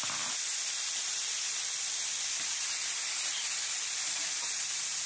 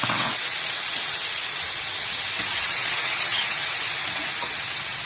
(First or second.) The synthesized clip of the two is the second